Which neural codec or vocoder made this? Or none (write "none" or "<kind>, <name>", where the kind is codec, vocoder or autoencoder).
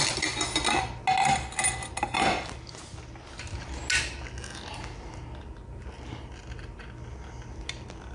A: none